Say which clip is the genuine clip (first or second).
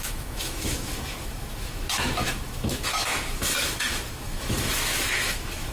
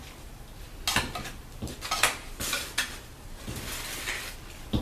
second